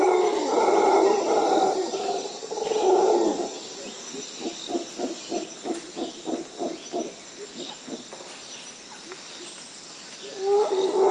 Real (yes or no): yes